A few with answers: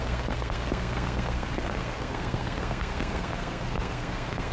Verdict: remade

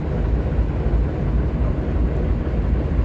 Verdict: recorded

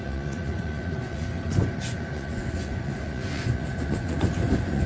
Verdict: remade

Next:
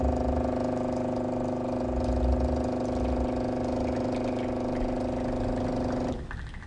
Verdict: recorded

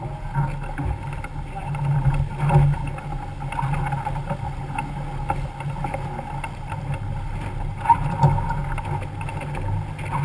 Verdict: recorded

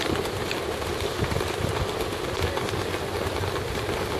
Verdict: recorded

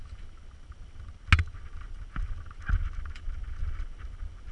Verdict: recorded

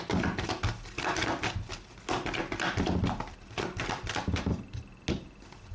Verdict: recorded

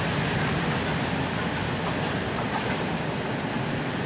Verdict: recorded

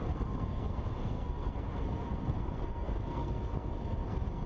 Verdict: remade